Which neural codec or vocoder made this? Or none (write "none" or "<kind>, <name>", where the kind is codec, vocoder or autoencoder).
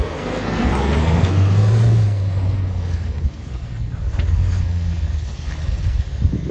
codec, SNAC